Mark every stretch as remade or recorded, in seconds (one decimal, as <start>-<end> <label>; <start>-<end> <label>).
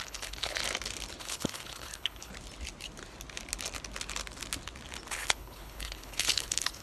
0.0-0.6 remade; 0.6-1.2 recorded; 1.2-2.3 remade; 2.3-5.1 recorded; 5.1-6.8 remade